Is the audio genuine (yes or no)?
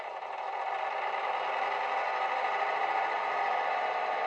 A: yes